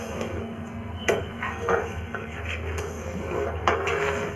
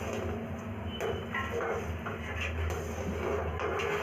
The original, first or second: second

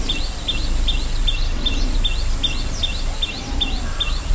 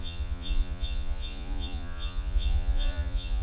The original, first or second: first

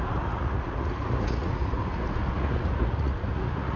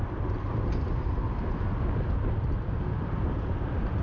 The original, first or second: second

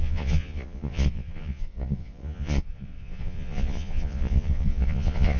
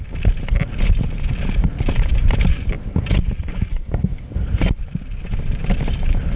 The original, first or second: second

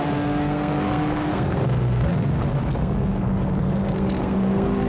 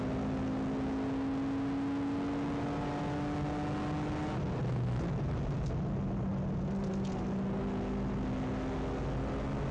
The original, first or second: second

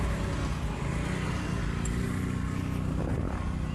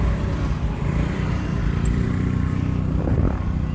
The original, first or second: first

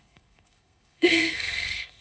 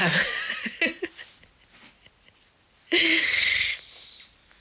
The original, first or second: second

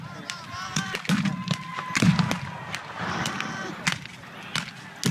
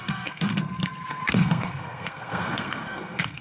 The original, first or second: first